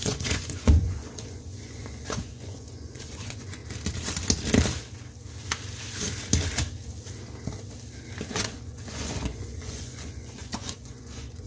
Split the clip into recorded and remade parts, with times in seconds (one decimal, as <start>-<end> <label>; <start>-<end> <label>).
0.0-3.6 remade; 3.6-8.3 recorded; 8.3-11.5 remade